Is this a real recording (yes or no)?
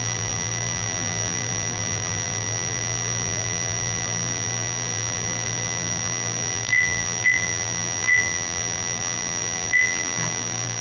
no